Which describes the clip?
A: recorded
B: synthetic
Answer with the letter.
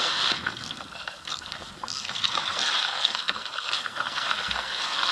B